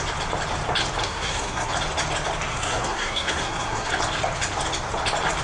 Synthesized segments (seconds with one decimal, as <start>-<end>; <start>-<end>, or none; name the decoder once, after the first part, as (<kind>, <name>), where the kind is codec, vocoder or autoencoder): 1.0-1.7 (codec, SNAC); 2.5-3.9